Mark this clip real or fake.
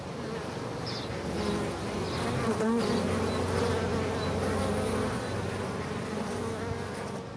real